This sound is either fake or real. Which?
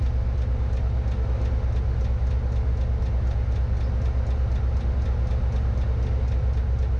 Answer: real